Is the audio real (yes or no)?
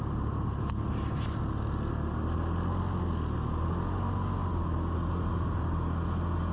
yes